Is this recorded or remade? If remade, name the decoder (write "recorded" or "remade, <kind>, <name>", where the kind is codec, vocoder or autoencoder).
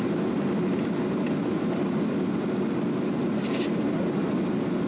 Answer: recorded